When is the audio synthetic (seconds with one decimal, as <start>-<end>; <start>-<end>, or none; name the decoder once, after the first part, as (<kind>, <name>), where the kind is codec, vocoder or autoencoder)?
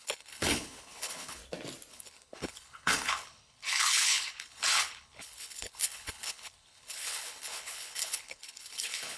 0.0-1.4 (codec, HILCodec); 1.9-9.2